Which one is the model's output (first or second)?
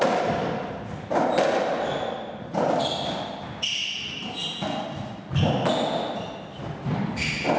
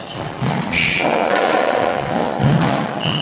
second